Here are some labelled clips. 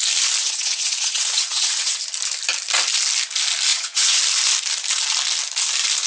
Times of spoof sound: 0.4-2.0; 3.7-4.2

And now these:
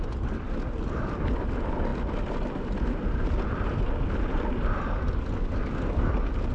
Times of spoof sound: none

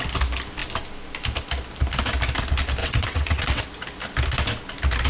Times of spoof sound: 2.8-3.6

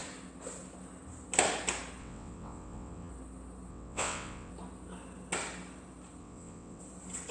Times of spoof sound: 2.0-3.1; 3.7-4.5; 6.2-6.8

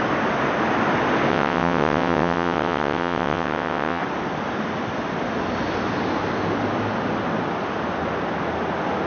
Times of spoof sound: 1.3-4.0

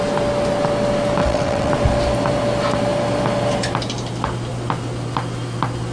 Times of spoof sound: 1.2-1.7

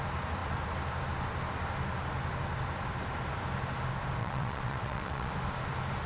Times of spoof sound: 4.2-5.3